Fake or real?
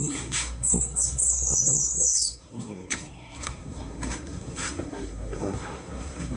fake